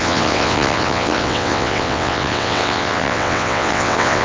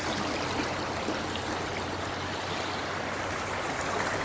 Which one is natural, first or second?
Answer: second